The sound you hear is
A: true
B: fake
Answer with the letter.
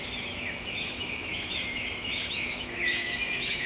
B